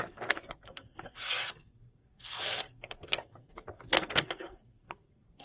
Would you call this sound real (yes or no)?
no